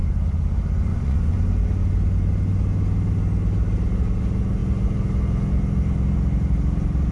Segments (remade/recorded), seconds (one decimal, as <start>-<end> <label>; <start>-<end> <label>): 0.0-0.9 recorded; 0.9-1.4 remade; 1.4-7.1 recorded

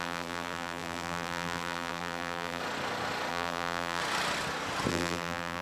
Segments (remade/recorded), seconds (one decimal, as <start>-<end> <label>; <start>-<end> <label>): 0.0-2.6 remade; 2.6-3.3 recorded; 3.3-4.0 remade; 4.0-4.9 recorded; 4.9-5.6 remade

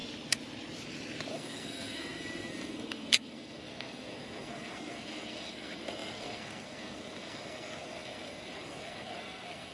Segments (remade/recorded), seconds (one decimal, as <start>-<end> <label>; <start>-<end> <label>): 0.0-1.3 recorded; 1.3-9.7 remade

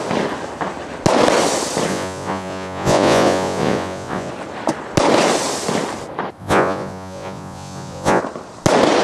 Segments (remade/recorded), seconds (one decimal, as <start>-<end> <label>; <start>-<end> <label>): 0.0-1.9 recorded; 1.9-4.3 remade; 4.3-6.4 recorded; 6.4-8.2 remade; 8.2-9.0 recorded

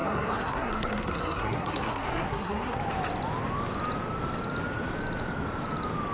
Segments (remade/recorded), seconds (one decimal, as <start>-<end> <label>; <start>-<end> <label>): 0.0-2.8 remade; 2.8-6.1 recorded

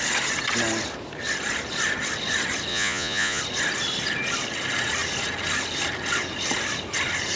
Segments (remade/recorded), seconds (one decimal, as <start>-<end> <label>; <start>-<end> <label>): 0.0-2.7 recorded; 2.7-3.4 remade; 3.4-7.4 recorded

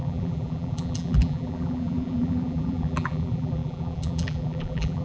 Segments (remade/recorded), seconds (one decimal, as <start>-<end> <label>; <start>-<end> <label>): 0.0-5.0 remade